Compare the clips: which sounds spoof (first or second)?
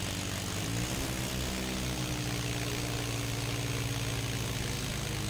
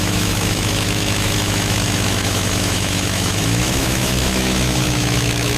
second